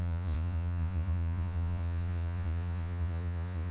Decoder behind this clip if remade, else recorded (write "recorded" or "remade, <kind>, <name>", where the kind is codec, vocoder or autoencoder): remade, vocoder, Vocos